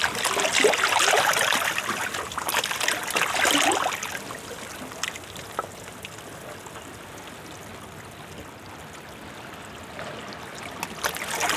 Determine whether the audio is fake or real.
real